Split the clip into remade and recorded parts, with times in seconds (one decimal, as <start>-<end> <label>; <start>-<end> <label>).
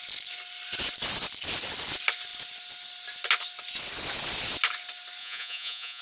0.0-5.2 recorded; 5.2-6.0 remade